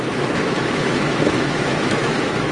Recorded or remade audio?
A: remade